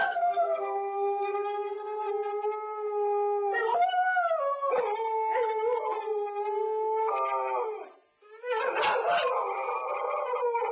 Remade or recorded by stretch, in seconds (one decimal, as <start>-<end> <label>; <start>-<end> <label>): 0.0-2.1 remade; 2.1-10.7 recorded